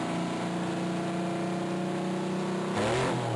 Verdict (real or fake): real